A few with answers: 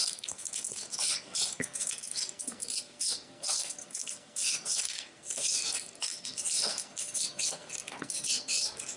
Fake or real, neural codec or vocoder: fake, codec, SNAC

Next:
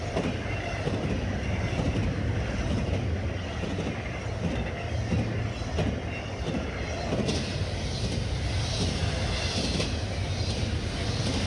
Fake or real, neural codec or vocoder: real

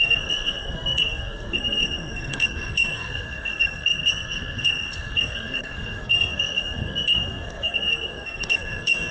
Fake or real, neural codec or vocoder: fake, codec, SNAC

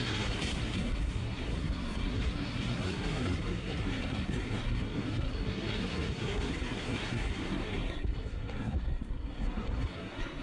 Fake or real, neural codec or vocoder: fake, codec, SNAC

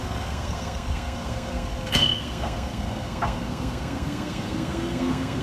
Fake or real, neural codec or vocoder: fake, codec, SNAC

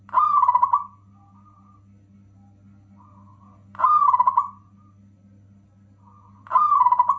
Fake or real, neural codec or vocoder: real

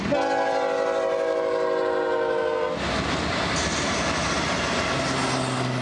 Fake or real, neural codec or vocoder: real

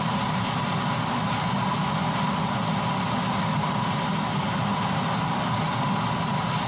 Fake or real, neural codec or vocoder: real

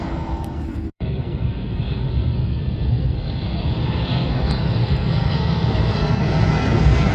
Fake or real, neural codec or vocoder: fake, codec, SNAC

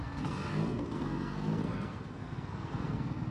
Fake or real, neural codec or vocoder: fake, codec, SNAC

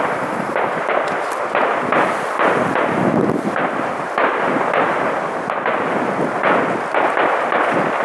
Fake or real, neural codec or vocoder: real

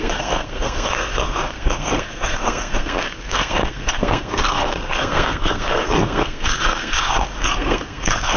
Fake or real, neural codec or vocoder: fake, codec, SNAC